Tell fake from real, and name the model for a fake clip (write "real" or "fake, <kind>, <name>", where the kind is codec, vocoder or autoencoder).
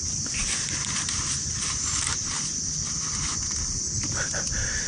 real